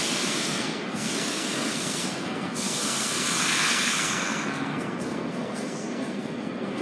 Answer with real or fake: fake